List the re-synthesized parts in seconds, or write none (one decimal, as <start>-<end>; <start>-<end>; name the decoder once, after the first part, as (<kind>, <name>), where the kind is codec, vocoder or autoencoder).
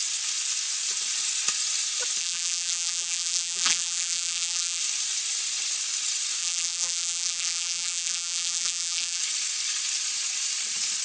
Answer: 2.2-4.8 (vocoder, BigVGAN v2); 6.4-9.2